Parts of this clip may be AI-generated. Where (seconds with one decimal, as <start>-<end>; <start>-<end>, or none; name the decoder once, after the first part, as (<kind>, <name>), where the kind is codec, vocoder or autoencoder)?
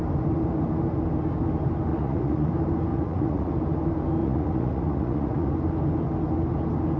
1.9-2.5 (vocoder, Vocos); 2.9-3.5; 4.2-5.5